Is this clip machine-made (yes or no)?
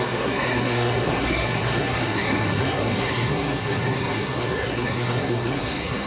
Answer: yes